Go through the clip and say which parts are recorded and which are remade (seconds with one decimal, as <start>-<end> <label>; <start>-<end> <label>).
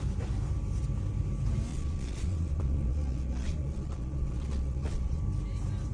0.0-1.7 recorded; 1.7-5.2 remade; 5.2-5.9 recorded